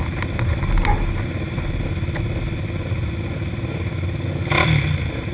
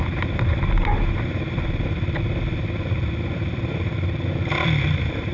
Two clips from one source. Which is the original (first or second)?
first